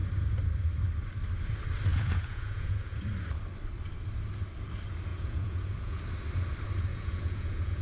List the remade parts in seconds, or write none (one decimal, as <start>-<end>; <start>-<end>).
1.9-3.0; 5.1-6.0; 6.9-7.8